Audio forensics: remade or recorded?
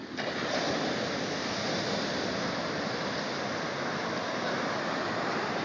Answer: recorded